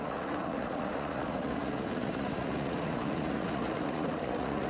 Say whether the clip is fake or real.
fake